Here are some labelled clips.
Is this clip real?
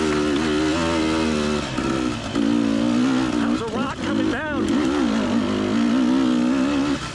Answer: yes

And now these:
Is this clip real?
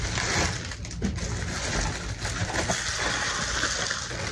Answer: yes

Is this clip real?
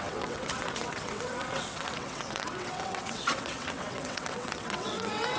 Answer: no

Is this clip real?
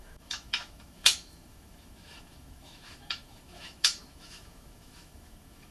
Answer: no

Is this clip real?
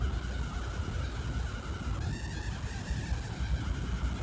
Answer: yes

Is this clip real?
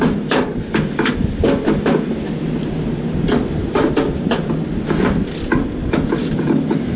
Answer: yes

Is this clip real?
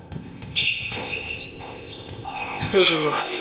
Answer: no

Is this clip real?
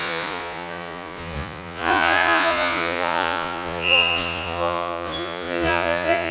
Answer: no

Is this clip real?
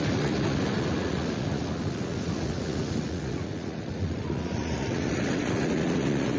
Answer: no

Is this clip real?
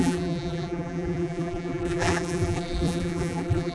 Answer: no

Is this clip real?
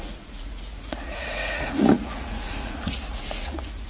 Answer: no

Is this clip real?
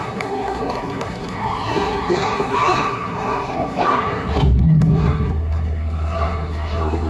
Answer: no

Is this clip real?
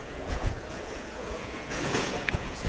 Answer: no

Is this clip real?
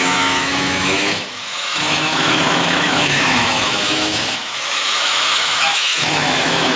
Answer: no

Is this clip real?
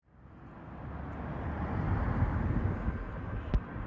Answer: yes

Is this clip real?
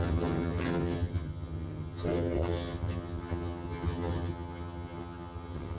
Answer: no